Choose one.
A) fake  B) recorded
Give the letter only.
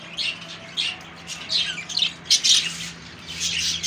B